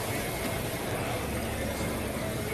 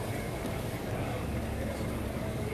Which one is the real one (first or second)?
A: first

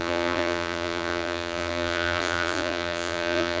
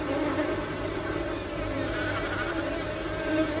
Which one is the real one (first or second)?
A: second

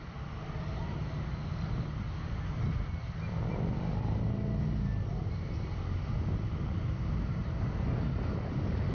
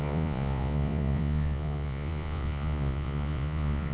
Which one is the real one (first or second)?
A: first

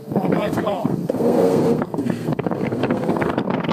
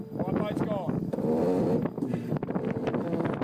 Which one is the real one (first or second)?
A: second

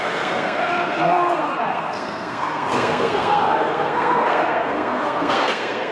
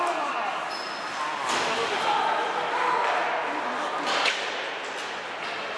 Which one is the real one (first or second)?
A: second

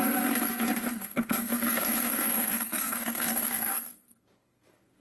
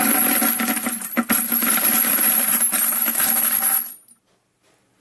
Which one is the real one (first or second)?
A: second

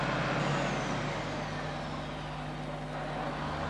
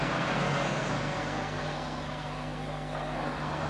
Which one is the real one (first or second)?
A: first